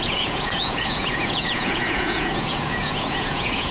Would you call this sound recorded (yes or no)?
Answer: no